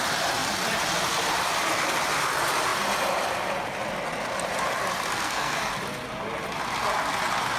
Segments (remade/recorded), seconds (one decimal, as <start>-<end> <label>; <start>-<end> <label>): 0.0-5.1 recorded; 5.1-5.7 remade; 5.7-7.6 recorded